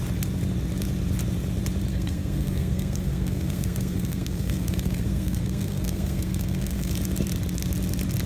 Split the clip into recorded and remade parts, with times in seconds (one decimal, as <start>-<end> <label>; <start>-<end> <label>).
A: 0.0-1.9 recorded; 1.9-6.9 remade; 6.9-8.3 recorded